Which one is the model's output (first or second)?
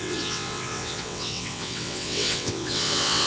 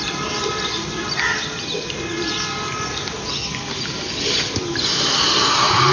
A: first